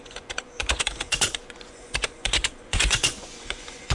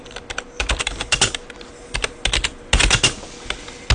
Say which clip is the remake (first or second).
first